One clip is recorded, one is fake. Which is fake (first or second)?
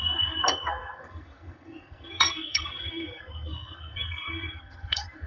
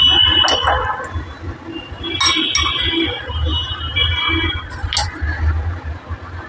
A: first